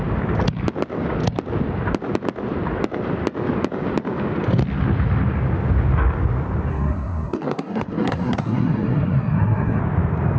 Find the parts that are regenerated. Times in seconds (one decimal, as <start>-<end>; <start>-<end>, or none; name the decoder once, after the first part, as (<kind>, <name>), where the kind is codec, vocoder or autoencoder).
6.7-9.8 (codec, SNAC)